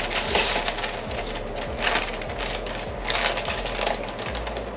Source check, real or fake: real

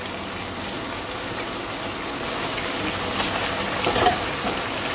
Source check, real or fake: real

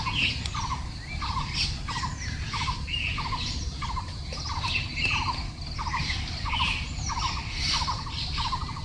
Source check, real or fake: real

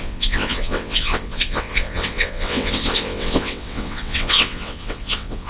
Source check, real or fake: fake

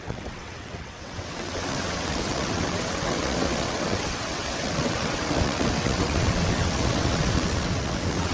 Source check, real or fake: fake